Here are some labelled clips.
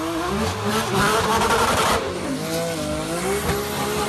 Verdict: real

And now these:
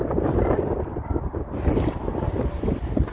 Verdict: real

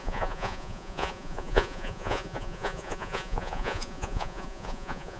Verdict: fake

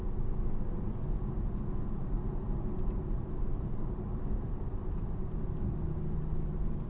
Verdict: real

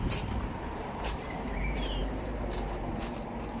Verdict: fake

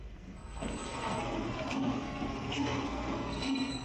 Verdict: fake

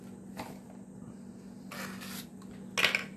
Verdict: real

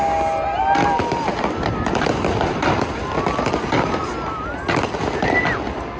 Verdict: real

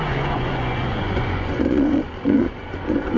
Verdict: fake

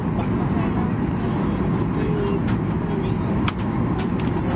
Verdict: real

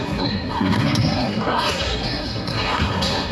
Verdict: fake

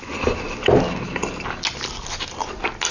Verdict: real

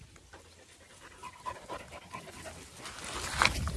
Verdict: real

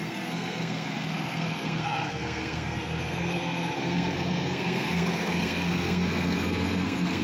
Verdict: fake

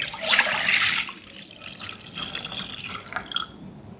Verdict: real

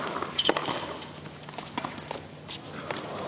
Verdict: real